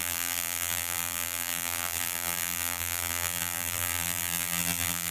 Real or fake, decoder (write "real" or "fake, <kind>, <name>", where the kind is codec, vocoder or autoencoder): fake, vocoder, BigVGAN v2